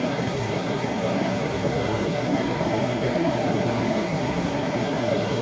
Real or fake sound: fake